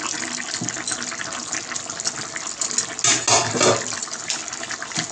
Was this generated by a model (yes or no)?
no